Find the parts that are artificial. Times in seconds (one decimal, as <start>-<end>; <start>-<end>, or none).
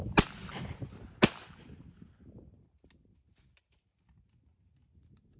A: none